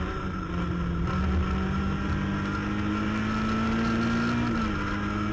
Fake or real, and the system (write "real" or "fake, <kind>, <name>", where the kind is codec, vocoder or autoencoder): real